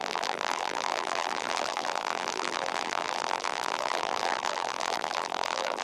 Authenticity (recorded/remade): remade